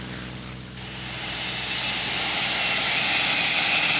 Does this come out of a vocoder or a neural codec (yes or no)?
no